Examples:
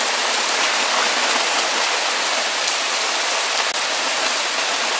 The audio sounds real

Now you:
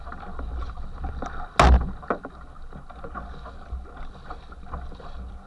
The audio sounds real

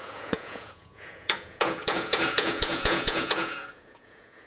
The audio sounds fake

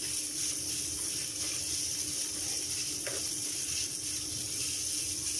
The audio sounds fake